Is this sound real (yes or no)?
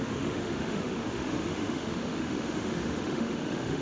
no